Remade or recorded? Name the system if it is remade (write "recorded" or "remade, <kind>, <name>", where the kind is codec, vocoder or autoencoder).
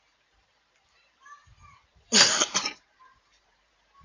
remade, vocoder, BigVGAN v2